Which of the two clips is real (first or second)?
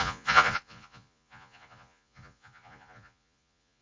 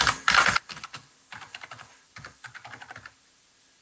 second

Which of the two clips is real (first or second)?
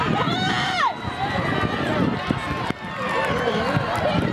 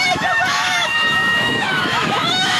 first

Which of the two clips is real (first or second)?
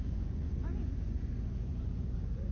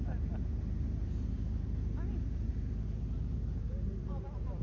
second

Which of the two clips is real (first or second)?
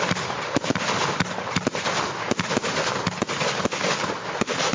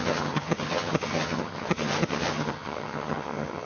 first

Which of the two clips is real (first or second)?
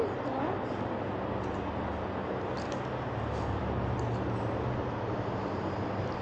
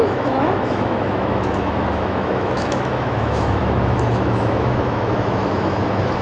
first